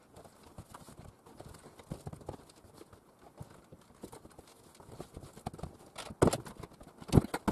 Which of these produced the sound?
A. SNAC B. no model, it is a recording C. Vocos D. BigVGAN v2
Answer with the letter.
B